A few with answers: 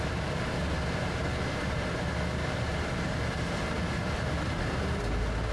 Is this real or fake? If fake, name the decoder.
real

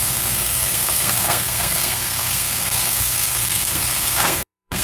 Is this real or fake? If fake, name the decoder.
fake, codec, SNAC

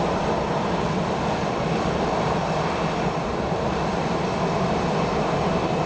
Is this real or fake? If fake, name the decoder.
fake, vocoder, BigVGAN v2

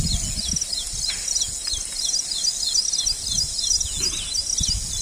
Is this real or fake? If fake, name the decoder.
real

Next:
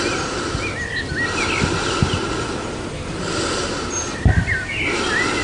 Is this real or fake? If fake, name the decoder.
real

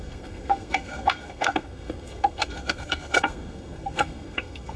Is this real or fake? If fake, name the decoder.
fake, codec, SNAC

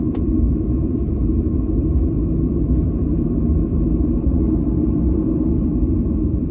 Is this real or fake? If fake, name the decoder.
fake, vocoder, BigVGAN v2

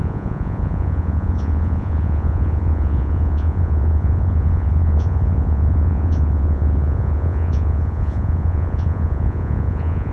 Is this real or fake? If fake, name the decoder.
fake, vocoder, Vocos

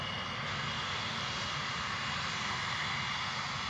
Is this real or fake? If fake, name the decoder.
real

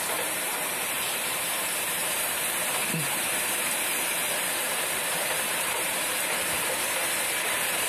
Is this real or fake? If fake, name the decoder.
fake, vocoder, BigVGAN v2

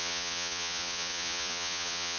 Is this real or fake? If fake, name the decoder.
fake, vocoder, Vocos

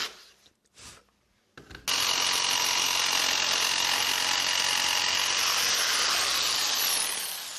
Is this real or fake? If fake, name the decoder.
real